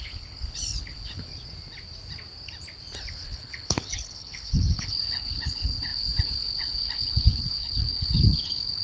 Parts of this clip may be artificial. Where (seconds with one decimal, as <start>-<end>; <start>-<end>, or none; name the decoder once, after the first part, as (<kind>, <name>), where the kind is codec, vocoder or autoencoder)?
0.0-1.3 (codec, HILCodec); 3.1-8.8